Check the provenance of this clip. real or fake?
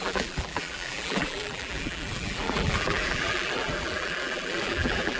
fake